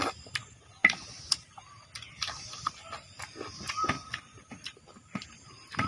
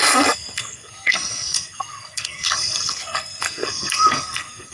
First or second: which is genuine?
first